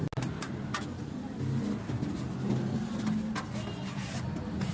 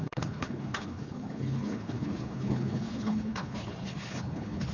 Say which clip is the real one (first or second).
first